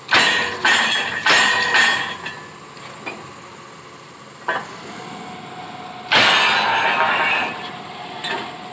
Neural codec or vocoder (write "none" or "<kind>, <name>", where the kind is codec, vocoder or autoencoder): none